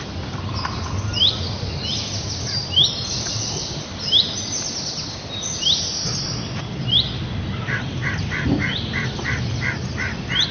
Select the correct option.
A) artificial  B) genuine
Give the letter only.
B